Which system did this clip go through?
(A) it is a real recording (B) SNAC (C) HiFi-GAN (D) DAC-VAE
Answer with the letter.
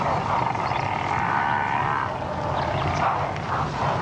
A